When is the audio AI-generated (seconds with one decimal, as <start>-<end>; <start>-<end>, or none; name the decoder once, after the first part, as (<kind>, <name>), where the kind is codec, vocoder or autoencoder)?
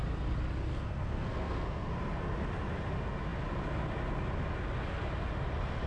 0.7-1.9 (codec, SNAC)